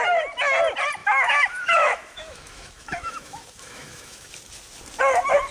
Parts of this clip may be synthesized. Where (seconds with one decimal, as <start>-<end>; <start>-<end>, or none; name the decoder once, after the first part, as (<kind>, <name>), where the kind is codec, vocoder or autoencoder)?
1.0-4.3 (autoencoder, DAC-VAE)